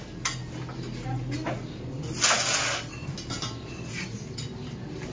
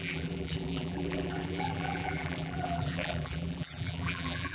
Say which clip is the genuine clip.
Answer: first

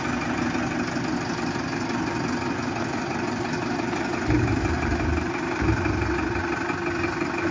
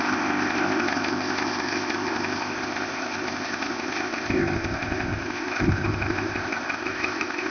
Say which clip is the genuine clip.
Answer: first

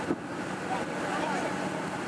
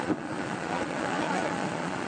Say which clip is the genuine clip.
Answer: first